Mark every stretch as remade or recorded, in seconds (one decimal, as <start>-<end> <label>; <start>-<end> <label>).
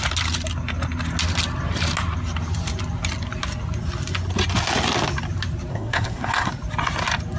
0.0-5.7 recorded; 5.7-6.5 remade; 6.5-7.4 recorded